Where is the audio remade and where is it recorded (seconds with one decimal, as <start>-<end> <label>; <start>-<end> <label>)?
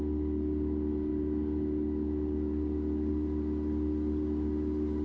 0.0-5.0 recorded